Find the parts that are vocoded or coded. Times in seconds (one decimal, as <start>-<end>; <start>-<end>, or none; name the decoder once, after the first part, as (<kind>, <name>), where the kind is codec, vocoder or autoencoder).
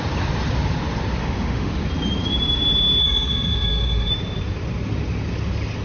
1.2-1.7 (autoencoder, DAC-VAE); 3.0-4.1